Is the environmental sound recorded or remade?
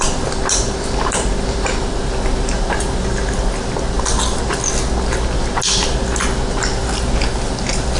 recorded